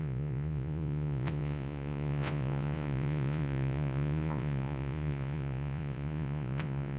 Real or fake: fake